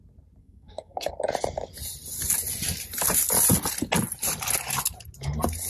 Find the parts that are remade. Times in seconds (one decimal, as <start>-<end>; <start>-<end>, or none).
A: 0.4-1.1